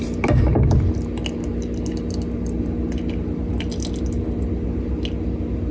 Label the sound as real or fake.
real